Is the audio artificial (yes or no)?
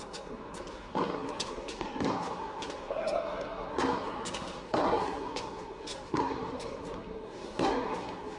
yes